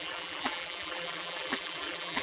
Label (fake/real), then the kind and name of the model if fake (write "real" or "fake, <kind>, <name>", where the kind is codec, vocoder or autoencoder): fake, vocoder, BigVGAN v2